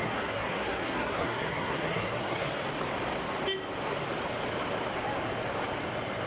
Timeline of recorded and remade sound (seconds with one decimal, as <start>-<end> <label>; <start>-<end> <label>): 0.0-2.5 remade; 2.5-6.3 recorded